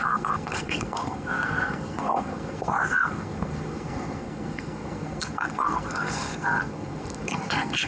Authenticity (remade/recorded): remade